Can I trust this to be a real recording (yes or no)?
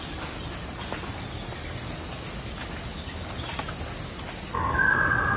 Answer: yes